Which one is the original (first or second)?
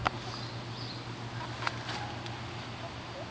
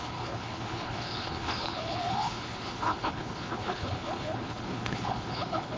first